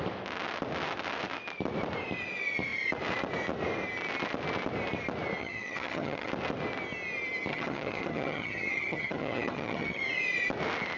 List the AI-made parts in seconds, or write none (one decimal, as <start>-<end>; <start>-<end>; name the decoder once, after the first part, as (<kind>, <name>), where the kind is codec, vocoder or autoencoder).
5.4-6.3 (vocoder, HiFi-GAN); 7.5-10.0